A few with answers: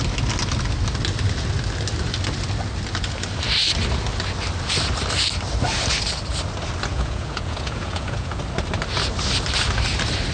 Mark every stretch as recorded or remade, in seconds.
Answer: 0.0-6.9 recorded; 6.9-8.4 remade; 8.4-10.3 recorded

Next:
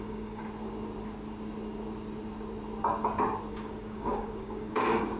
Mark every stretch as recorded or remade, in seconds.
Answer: 0.0-0.4 remade; 0.4-3.5 recorded; 3.5-5.2 remade

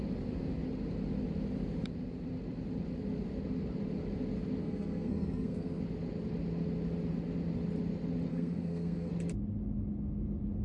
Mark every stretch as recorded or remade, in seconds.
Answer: 0.0-4.6 recorded; 4.6-5.8 remade; 5.8-8.3 recorded; 8.3-9.1 remade; 9.1-10.6 recorded

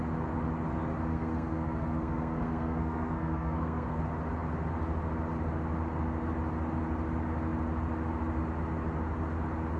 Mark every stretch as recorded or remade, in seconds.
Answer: 0.0-1.1 recorded; 1.1-4.0 remade; 4.0-9.8 recorded

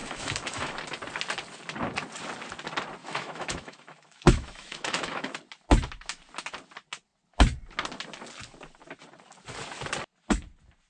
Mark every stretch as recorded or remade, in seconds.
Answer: 0.0-0.8 remade; 0.8-3.0 recorded; 3.0-5.4 remade; 5.4-10.9 recorded

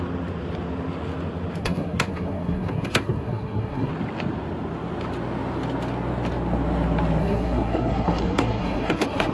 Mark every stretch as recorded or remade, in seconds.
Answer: 0.0-1.6 recorded; 1.6-3.9 remade; 3.9-7.2 recorded; 7.2-9.3 remade

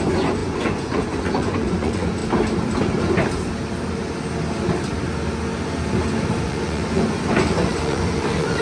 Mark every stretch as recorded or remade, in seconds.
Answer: 0.0-2.2 remade; 2.2-6.4 recorded; 6.4-8.6 remade

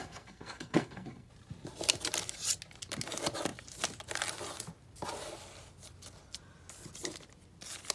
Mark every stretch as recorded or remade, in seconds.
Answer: 0.0-1.3 remade; 1.3-7.9 recorded